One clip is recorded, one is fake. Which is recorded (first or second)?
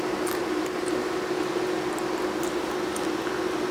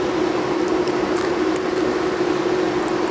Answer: first